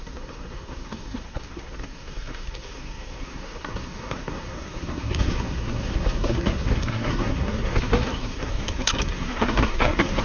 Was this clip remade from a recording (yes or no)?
yes